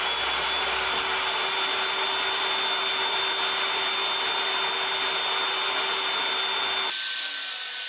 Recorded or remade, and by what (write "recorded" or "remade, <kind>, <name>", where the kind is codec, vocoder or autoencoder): recorded